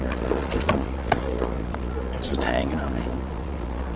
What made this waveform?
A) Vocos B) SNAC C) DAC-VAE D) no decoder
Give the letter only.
A